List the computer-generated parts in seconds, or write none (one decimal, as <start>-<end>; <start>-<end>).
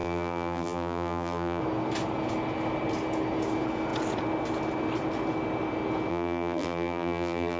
0.0-1.6; 6.1-7.6